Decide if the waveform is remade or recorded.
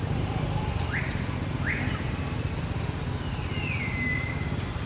recorded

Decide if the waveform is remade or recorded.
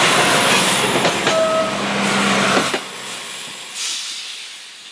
recorded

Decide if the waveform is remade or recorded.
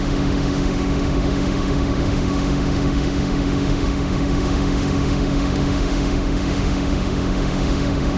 remade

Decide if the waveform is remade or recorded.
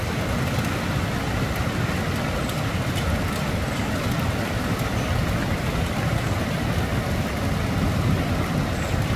recorded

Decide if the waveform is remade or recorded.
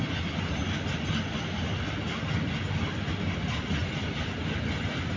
recorded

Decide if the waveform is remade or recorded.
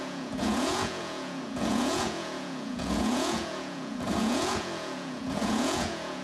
remade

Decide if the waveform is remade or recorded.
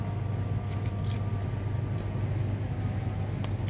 recorded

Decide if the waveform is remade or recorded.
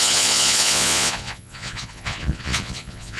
remade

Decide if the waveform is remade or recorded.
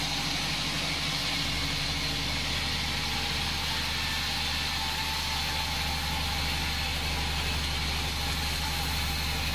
recorded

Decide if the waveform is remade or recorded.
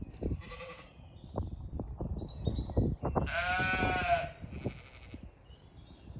recorded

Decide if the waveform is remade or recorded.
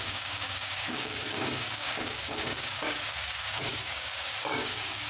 remade